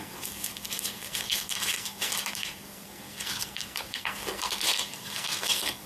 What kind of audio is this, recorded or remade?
remade